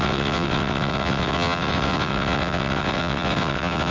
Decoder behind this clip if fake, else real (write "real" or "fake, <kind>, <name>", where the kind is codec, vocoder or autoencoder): fake, vocoder, WaveNeXt